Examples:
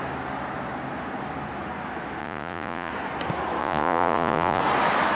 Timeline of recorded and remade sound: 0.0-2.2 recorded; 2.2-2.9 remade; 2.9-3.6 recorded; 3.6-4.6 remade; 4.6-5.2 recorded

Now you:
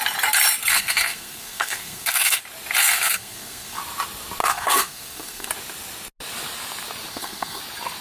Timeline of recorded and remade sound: 0.0-0.7 recorded; 0.7-2.4 remade; 2.4-2.8 recorded; 2.8-3.8 remade; 3.8-4.4 recorded; 4.4-5.5 remade; 5.5-7.1 recorded; 7.1-7.6 remade; 7.6-8.0 recorded

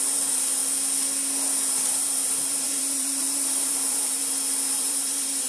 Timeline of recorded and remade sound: 0.0-0.6 remade; 0.6-1.7 recorded; 1.7-4.2 remade; 4.2-4.8 recorded; 4.8-5.5 remade

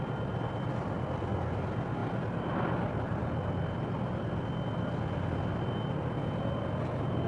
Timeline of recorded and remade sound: 0.0-7.3 recorded

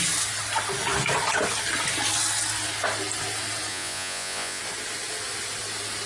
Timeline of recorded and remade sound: 0.0-3.7 recorded; 3.7-4.6 remade; 4.6-6.1 recorded

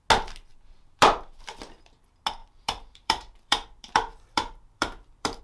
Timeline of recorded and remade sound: 0.0-0.5 recorded; 0.5-1.8 remade; 1.8-2.4 recorded; 2.4-5.4 remade

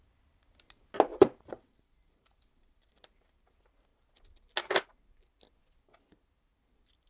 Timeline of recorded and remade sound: 0.0-1.1 recorded; 1.1-2.9 remade; 2.9-7.1 recorded

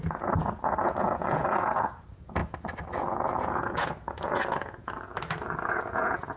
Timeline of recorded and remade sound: 0.0-2.4 remade; 2.4-2.9 recorded; 2.9-5.1 remade; 5.1-5.7 recorded; 5.7-6.4 remade